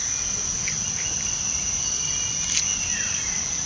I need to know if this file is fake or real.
real